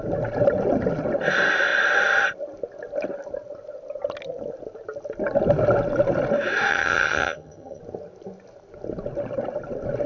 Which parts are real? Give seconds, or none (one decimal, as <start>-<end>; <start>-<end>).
0.0-6.7; 7.8-10.1